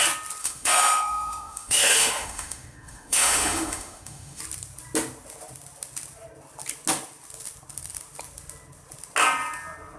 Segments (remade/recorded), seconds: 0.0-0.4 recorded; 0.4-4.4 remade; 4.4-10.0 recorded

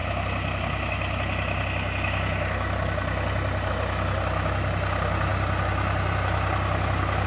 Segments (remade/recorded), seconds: 0.0-7.3 recorded

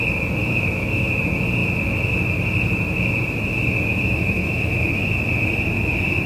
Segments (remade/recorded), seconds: 0.0-0.4 recorded; 0.4-1.1 remade; 1.1-3.9 recorded; 3.9-5.1 remade; 5.1-6.3 recorded

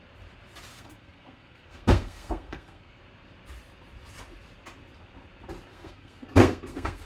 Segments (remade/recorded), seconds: 0.0-0.7 recorded; 0.7-3.0 remade; 3.0-5.7 recorded; 5.7-7.1 remade